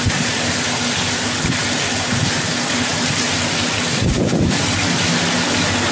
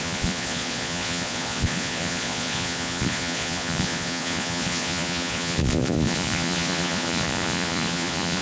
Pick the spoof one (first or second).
second